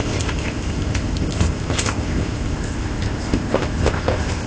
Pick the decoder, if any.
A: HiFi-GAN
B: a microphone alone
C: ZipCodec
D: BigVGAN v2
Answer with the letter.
C